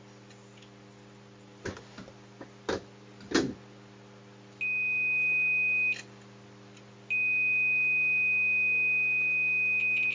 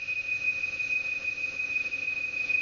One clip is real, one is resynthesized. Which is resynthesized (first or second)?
second